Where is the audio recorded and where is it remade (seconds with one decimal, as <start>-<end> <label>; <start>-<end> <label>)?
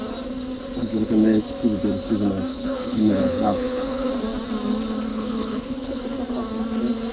0.0-0.8 recorded; 0.8-1.4 remade; 1.4-2.5 recorded; 2.5-4.1 remade; 4.1-5.1 recorded; 5.1-6.0 remade; 6.0-7.1 recorded